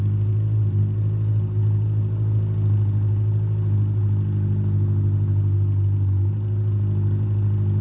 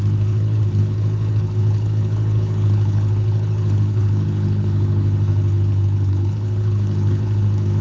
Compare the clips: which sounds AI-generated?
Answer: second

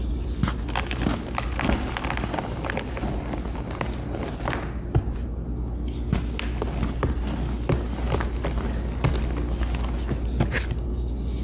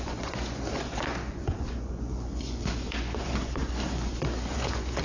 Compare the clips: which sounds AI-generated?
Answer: second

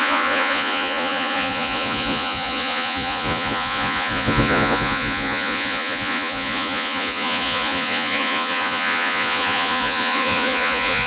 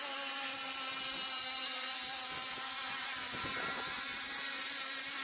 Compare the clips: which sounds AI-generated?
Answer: first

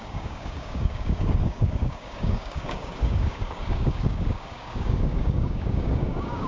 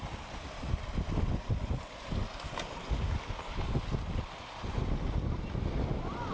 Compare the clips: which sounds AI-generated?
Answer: first